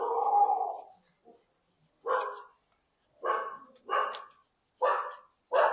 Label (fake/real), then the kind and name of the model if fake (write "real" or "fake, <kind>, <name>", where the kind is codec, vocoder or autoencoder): real